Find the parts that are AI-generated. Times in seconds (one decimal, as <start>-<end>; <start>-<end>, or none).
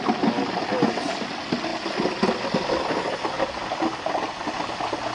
none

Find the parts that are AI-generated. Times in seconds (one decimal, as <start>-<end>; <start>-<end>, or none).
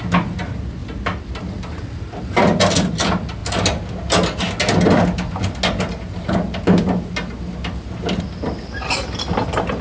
none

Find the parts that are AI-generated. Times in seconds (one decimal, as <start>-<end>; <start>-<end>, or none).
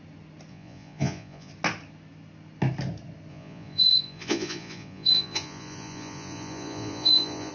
0.5-1.5; 3.3-7.5